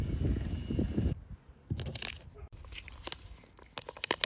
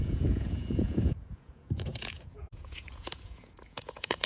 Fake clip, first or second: second